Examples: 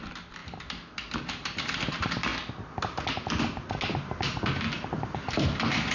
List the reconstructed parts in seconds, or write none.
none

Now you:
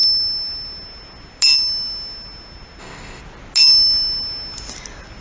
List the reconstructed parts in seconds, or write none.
2.8-3.2 (codec, ZipCodec)